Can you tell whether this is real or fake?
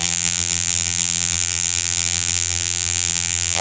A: fake